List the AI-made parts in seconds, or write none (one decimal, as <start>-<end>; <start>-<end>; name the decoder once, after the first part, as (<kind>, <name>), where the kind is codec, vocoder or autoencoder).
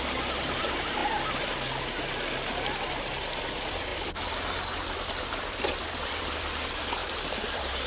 0.0-1.0 (vocoder, BigVGAN v2); 3.0-3.9; 4.6-7.9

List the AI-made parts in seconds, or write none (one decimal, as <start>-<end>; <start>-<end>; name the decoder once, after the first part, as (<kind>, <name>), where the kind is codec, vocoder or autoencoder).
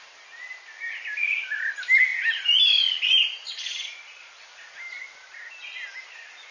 3.5-4.4 (vocoder, Vocos)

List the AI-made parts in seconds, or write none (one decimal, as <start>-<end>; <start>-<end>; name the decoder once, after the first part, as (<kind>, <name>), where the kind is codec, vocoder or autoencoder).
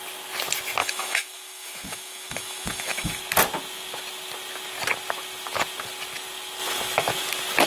0.8-3.2 (autoencoder, DAC-VAE)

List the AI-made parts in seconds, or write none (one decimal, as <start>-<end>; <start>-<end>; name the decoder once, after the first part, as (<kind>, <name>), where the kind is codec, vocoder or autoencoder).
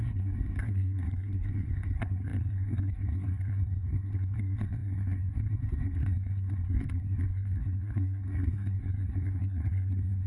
0.0-10.3 (codec, SNAC)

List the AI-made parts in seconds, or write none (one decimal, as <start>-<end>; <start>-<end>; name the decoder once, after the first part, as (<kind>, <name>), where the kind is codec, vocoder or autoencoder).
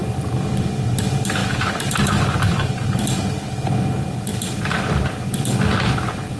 0.0-0.5 (vocoder, BigVGAN v2); 1.4-3.0; 4.3-5.3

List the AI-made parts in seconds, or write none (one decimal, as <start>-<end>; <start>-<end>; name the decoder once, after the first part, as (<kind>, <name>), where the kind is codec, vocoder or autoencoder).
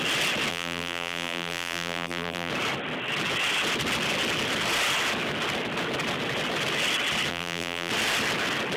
0.5-2.5 (vocoder, BigVGAN v2); 7.3-7.9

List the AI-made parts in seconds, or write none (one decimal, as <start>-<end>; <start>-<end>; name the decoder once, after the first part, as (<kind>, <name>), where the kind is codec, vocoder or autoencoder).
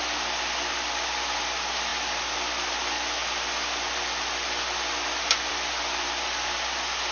none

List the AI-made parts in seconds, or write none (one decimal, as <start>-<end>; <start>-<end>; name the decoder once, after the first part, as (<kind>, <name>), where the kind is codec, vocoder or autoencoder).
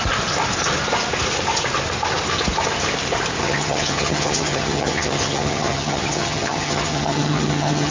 3.4-7.9 (vocoder, HiFi-GAN)